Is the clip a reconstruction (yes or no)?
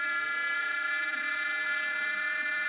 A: no